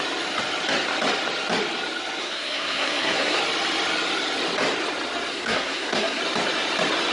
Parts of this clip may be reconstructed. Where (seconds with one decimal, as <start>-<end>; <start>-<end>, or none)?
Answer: 2.2-3.4; 5.3-6.2